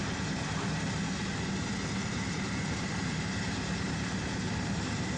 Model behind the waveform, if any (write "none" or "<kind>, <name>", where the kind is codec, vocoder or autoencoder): vocoder, BigVGAN v2